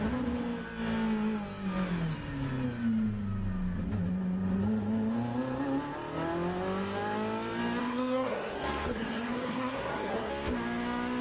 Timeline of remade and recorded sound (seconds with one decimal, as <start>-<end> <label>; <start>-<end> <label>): 0.0-7.8 recorded; 7.8-10.3 remade; 10.3-11.2 recorded